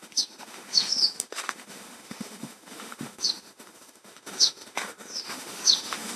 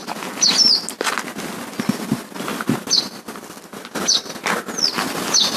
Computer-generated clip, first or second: first